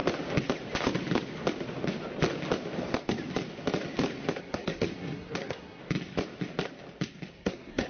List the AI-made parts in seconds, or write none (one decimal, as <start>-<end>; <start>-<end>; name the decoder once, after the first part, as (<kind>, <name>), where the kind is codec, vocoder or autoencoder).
4.4-5.8 (codec, SNAC); 7.3-7.9